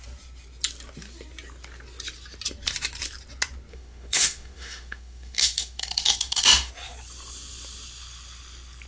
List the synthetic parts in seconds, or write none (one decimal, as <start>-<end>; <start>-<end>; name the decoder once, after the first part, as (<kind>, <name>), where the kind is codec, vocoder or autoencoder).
3.7-6.7 (autoencoder, DAC-VAE)